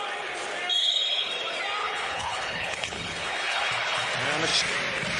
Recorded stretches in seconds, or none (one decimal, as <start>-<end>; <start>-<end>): 0.0-0.8; 1.3-1.8; 4.1-5.2